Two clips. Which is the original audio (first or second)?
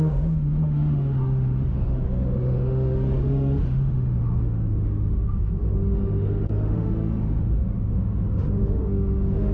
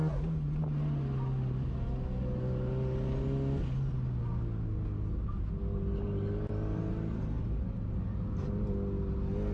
second